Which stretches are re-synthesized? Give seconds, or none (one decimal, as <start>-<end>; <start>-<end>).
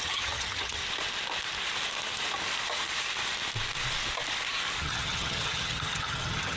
0.0-0.8; 4.8-6.6